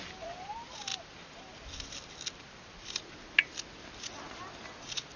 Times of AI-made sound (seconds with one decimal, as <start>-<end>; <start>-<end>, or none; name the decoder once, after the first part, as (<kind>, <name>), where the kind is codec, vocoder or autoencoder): none